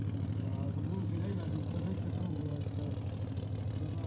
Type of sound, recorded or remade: recorded